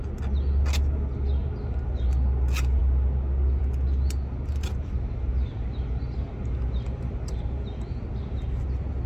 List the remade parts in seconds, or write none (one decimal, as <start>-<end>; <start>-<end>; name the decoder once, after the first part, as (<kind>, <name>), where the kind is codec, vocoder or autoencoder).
1.4-2.1 (vocoder, BigVGAN v2); 4.7-8.0